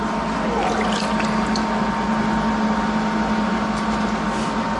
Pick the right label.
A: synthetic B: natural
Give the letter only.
B